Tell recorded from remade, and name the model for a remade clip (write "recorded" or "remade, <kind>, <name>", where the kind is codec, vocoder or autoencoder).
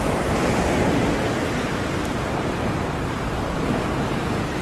recorded